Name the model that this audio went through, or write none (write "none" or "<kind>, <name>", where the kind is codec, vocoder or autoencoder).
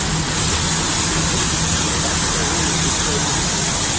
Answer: none